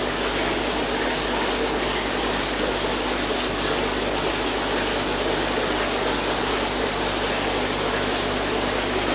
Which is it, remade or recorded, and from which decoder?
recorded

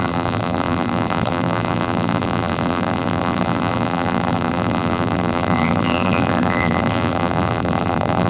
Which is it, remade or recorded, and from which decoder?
remade, vocoder, BigVGAN v2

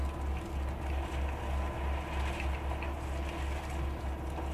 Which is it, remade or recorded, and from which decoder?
recorded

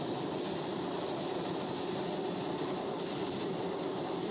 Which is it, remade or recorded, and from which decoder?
remade, vocoder, BigVGAN v2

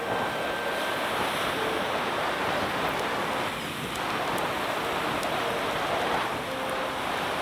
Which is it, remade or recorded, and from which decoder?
recorded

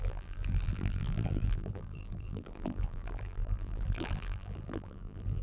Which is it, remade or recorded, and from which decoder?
remade, vocoder, BigVGAN v2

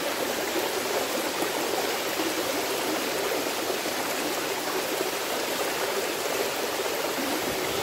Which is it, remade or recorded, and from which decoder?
remade, vocoder, BigVGAN v2